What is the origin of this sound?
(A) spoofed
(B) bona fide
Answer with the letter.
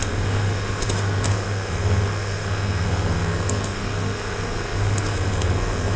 A